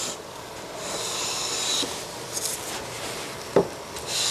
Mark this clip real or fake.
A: fake